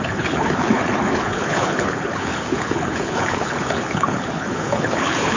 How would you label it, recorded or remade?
remade